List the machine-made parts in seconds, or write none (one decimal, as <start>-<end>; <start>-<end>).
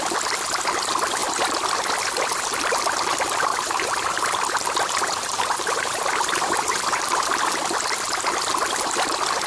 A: 3.5-7.4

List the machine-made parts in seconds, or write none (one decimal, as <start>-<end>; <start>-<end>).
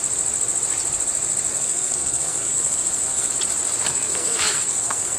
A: 1.5-3.3; 3.9-5.2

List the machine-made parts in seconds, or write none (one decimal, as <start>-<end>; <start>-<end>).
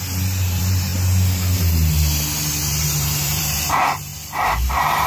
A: 0.0-0.9; 2.8-4.1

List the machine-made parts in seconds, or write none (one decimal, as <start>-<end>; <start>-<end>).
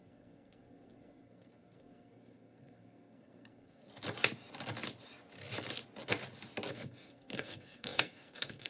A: 0.0-3.9; 6.7-8.7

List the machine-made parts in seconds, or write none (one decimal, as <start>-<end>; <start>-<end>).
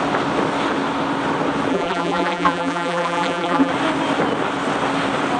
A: 1.7-3.7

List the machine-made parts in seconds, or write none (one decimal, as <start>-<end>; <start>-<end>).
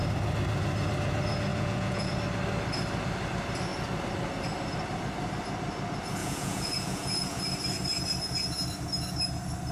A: 1.5-2.1; 6.2-7.4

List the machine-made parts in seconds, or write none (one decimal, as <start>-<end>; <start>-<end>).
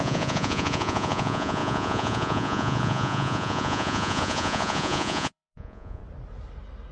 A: 0.0-6.0